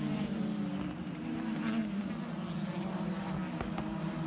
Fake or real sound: real